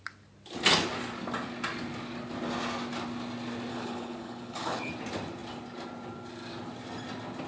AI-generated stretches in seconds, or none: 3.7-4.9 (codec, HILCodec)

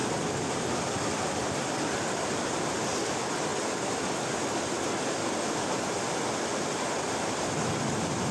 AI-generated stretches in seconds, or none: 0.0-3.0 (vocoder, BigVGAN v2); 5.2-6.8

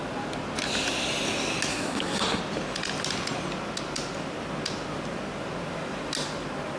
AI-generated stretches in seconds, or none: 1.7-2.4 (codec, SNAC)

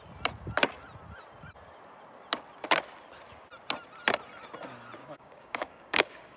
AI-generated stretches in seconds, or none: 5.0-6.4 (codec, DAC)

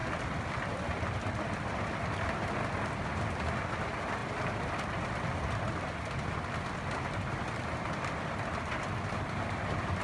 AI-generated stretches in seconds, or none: none

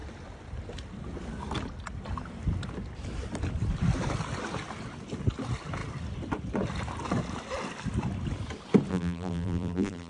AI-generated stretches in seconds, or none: 8.9-10.1 (vocoder, BigVGAN v2)